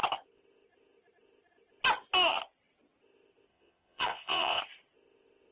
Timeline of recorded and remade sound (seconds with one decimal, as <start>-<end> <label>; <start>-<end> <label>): 0.0-3.5 recorded; 3.5-4.6 remade; 4.6-5.5 recorded